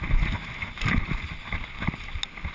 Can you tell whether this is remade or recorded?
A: recorded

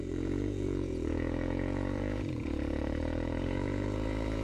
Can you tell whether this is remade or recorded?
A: remade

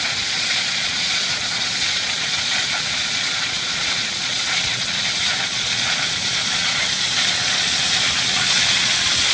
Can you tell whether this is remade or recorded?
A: remade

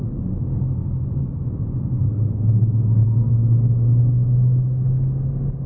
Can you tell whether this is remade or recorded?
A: recorded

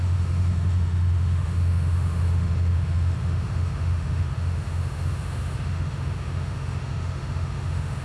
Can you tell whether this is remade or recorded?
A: remade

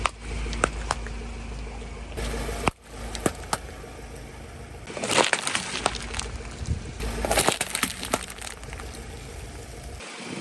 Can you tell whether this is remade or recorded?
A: recorded